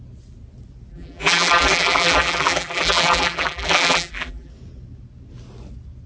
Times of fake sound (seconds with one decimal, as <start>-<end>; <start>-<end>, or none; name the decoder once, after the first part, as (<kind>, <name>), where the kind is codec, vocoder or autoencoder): 0.9-4.5 (vocoder, BigVGAN v2)